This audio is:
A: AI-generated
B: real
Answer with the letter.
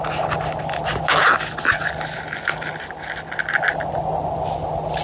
B